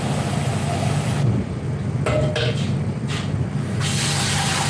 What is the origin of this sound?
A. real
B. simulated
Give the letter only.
A